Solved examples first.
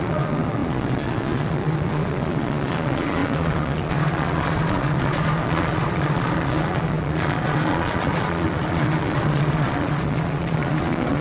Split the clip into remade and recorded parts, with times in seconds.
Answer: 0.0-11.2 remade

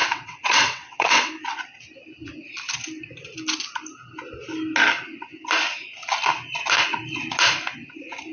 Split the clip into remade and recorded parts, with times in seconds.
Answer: 0.0-1.3 remade; 1.3-8.3 recorded

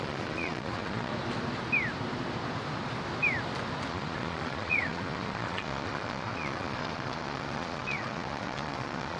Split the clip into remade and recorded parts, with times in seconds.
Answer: 0.0-1.1 remade; 1.1-3.9 recorded; 3.9-9.2 remade

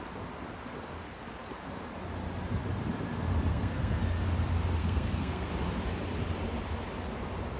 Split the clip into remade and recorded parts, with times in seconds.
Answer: 0.0-3.5 recorded; 3.5-4.0 remade; 4.0-4.8 recorded; 4.8-5.5 remade; 5.5-7.6 recorded

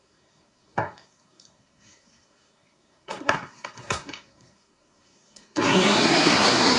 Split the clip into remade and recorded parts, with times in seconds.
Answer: 0.0-6.8 remade